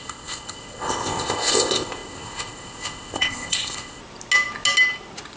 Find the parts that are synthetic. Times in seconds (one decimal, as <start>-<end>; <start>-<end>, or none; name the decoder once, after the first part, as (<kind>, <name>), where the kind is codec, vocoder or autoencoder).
0.0-4.0 (codec, ZipCodec)